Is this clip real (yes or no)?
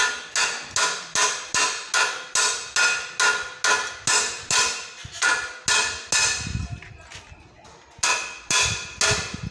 yes